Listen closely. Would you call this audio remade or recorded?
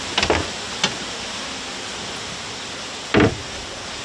recorded